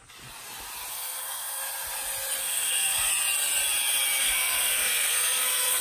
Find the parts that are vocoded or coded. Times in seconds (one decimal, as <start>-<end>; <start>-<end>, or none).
0.9-1.6; 2.4-3.1; 4.2-5.8